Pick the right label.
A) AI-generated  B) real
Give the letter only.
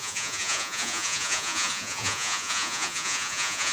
A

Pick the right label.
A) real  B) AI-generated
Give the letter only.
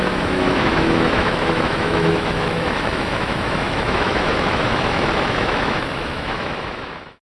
B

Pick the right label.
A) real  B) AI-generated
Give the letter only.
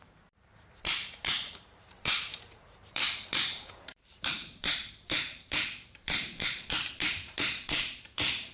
B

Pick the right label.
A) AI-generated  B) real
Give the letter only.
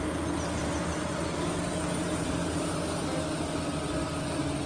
B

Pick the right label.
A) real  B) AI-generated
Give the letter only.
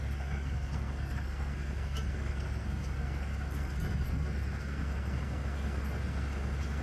B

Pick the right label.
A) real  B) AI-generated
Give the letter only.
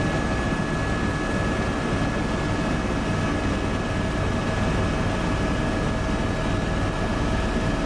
A